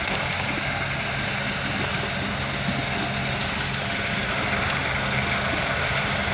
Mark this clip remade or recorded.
recorded